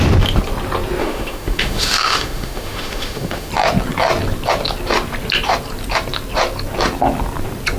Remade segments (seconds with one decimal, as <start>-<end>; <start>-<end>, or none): 1.0-3.5